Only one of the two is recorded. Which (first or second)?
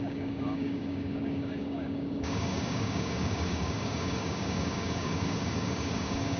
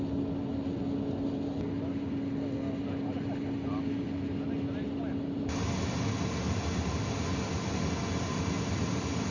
second